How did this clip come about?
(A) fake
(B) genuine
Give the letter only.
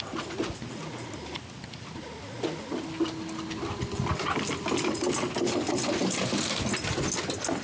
B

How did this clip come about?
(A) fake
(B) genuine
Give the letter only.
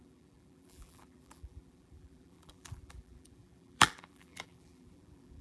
A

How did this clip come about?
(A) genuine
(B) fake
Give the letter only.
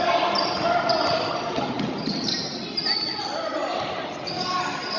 A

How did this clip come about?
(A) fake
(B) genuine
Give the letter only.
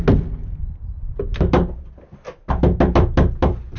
B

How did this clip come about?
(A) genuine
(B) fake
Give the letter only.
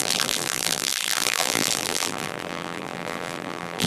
B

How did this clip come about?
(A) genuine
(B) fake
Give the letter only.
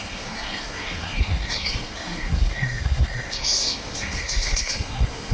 B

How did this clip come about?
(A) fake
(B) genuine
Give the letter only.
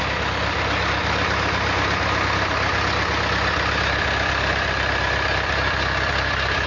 B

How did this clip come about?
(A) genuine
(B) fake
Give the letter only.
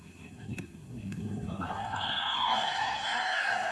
B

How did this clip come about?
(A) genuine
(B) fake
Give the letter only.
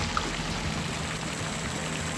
A